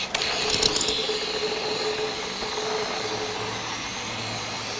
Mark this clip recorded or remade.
recorded